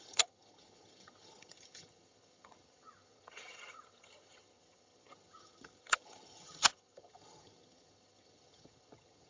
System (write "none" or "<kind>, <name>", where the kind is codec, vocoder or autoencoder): vocoder, HiFi-GAN